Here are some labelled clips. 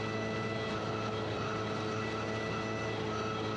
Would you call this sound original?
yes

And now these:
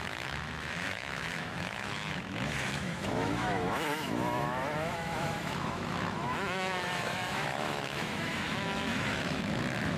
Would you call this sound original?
no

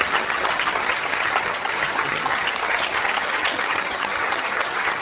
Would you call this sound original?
no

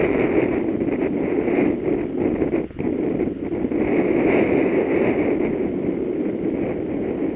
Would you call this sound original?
yes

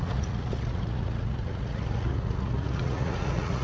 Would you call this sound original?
no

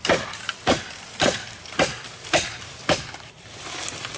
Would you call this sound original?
no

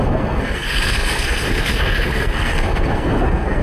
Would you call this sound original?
no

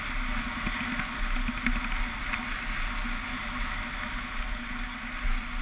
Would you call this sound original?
yes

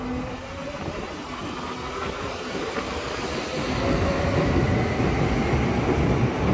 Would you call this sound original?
yes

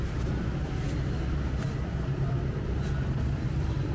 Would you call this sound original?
no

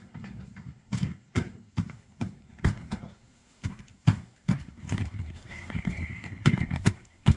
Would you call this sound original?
no